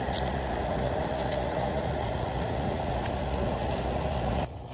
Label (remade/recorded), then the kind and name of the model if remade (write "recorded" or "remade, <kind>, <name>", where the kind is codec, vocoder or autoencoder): remade, vocoder, Vocos